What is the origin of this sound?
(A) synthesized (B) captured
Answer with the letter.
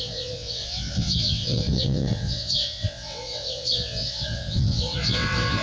A